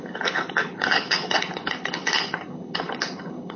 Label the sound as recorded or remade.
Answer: remade